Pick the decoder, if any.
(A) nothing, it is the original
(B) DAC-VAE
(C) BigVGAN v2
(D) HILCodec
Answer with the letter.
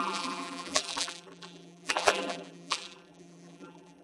C